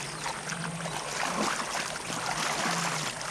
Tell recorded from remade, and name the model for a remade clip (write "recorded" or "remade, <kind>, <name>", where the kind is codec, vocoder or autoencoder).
recorded